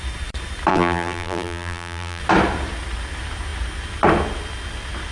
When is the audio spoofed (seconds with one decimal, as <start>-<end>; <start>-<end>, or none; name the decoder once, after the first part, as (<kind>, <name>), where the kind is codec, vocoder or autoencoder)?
0.7-2.2 (vocoder, BigVGAN v2)